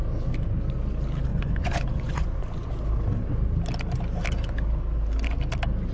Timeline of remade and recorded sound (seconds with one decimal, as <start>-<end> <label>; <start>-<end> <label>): 0.0-1.3 recorded; 1.3-2.7 remade; 2.7-5.9 recorded